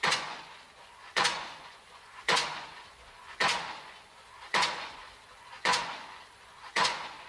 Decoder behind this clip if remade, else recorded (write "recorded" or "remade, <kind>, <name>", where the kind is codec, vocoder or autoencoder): remade, vocoder, Vocos